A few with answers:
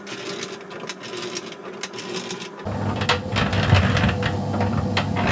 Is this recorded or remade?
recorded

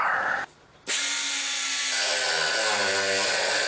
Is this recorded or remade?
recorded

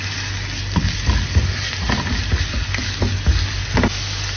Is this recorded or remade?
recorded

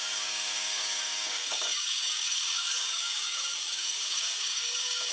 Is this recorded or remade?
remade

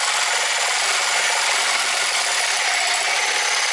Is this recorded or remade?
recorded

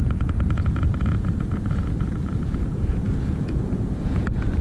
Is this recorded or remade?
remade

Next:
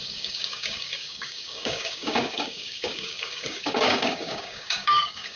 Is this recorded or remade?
remade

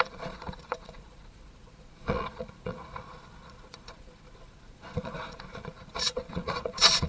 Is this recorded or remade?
remade